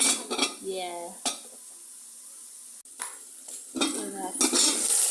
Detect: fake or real real